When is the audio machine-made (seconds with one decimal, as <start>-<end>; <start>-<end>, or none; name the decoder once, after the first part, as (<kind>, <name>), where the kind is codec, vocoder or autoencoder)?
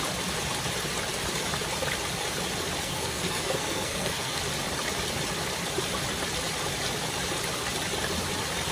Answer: 2.8-4.4 (codec, SNAC)